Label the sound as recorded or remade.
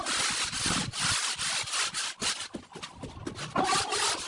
recorded